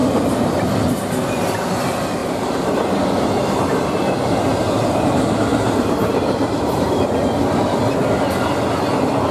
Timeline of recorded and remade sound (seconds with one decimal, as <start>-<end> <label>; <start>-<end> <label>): 0.0-2.2 recorded; 2.2-2.7 remade; 2.7-5.5 recorded; 5.5-7.1 remade; 7.1-9.3 recorded